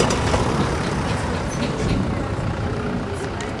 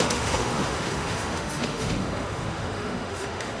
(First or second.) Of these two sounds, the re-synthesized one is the second